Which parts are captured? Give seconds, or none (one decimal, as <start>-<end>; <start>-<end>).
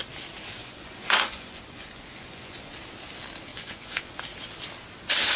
0.0-0.6; 2.7-3.5; 4.2-5.4